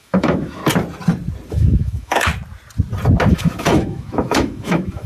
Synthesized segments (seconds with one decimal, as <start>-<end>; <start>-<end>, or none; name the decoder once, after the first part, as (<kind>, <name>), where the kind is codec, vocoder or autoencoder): 0.0-0.6 (autoencoder, DAC-VAE); 1.5-2.3; 3.3-5.1